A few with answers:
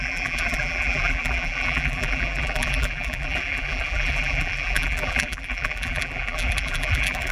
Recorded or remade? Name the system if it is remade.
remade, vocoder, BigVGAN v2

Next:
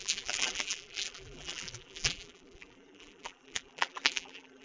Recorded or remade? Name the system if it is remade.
remade, vocoder, BigVGAN v2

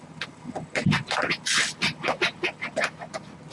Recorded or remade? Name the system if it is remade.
recorded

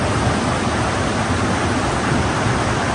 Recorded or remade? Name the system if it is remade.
recorded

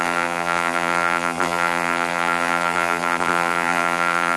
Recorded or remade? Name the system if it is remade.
remade, vocoder, BigVGAN v2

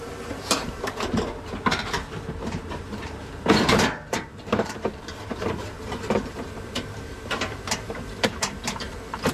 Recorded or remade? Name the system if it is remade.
remade, vocoder, BigVGAN v2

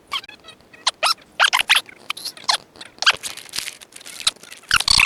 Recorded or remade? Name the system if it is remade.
recorded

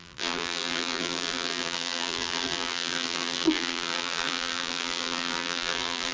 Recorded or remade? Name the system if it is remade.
remade, vocoder, BigVGAN v2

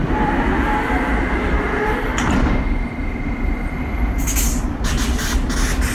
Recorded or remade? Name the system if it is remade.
recorded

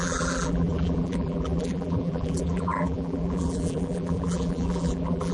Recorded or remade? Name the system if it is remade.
remade, vocoder, BigVGAN v2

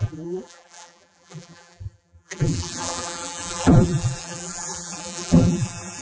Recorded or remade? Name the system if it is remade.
remade, vocoder, BigVGAN v2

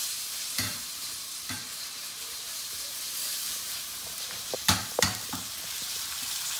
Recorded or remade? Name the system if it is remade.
remade, vocoder, BigVGAN v2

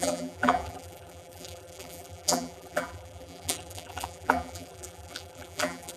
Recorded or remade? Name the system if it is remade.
remade, vocoder, BigVGAN v2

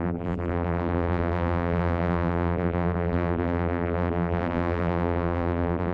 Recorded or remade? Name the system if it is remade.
remade, vocoder, BigVGAN v2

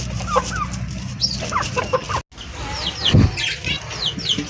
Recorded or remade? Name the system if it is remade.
recorded